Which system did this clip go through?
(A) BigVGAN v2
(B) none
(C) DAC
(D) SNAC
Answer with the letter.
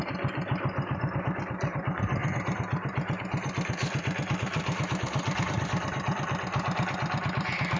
A